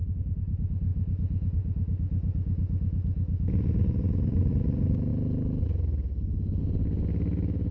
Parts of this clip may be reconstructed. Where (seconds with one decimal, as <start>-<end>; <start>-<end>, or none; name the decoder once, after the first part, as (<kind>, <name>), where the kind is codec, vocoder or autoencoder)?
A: none